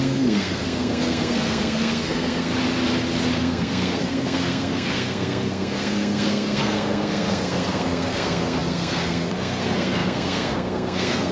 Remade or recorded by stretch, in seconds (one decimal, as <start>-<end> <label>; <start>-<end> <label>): 0.0-2.5 remade; 2.5-3.3 recorded; 3.3-11.3 remade